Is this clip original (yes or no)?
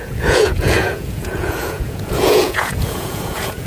no